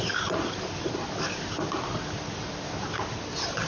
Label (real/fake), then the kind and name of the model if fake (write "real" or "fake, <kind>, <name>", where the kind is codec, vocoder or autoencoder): real